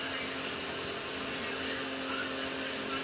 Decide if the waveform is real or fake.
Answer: real